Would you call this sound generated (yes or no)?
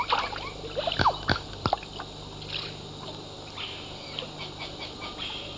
no